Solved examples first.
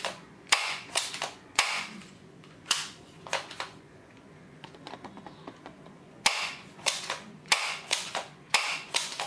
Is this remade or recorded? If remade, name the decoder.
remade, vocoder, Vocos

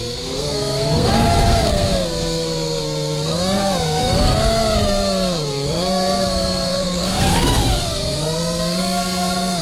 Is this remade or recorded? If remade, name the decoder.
remade, codec, SNAC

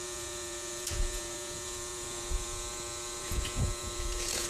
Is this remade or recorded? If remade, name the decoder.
remade, vocoder, Vocos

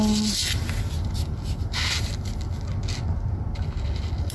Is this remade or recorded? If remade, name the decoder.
recorded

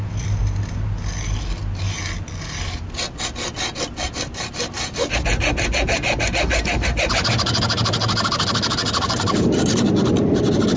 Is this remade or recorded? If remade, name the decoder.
recorded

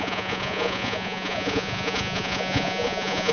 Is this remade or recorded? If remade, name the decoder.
remade, vocoder, Vocos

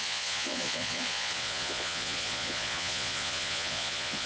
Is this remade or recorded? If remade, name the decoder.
remade, vocoder, Vocos